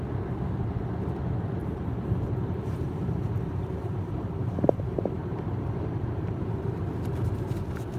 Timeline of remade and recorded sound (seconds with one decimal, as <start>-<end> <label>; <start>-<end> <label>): 0.0-1.6 recorded; 1.6-6.4 remade; 6.4-8.0 recorded